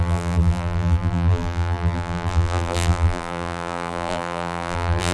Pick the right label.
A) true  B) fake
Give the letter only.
B